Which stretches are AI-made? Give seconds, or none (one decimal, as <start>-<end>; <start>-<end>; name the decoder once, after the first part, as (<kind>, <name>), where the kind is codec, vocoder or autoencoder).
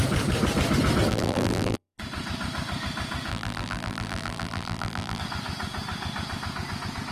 1.1-2.0 (vocoder, BigVGAN v2); 3.3-5.2